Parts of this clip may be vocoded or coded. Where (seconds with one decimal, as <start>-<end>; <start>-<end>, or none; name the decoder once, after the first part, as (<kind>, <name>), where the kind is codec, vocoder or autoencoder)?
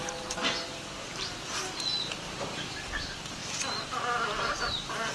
none